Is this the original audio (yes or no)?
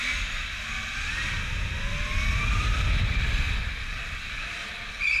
yes